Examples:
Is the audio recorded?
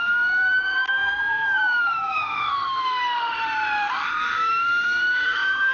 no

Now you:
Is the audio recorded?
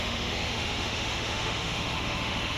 no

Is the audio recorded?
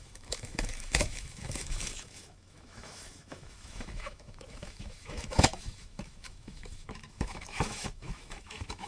no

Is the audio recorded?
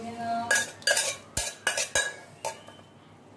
yes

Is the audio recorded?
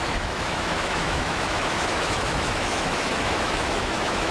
no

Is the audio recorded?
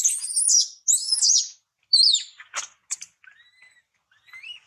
yes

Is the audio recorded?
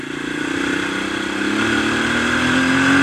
yes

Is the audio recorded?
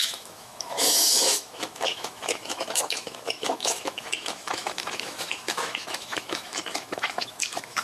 no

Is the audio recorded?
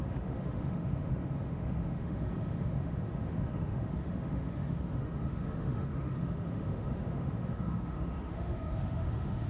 no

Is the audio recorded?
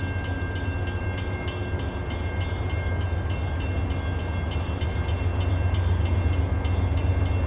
yes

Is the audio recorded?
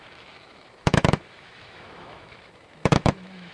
no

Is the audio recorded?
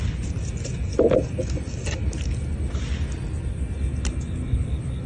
yes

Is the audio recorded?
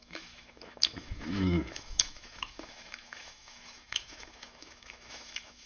no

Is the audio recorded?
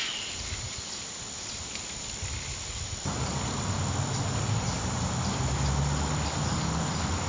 yes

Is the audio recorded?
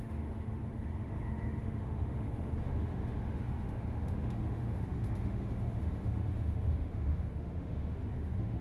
no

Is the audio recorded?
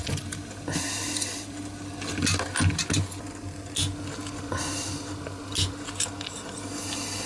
yes